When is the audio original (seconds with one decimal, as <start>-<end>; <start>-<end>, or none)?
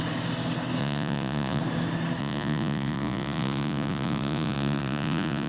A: 0.0-0.8; 1.6-2.2